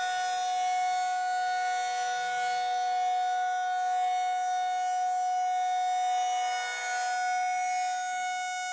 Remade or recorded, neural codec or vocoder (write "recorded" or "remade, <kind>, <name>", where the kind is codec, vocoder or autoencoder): recorded